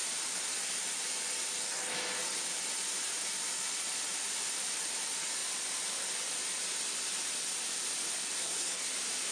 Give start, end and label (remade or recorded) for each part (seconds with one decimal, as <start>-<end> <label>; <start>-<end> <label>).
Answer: 0.0-8.4 recorded; 8.4-8.9 remade; 8.9-9.3 recorded